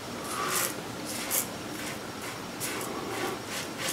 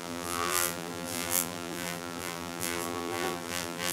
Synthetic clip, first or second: second